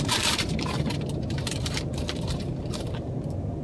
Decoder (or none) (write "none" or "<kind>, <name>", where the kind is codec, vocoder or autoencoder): vocoder, BigVGAN v2